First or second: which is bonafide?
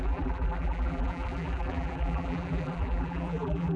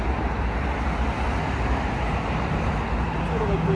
second